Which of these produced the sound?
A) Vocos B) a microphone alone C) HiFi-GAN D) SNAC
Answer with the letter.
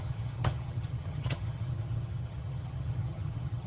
C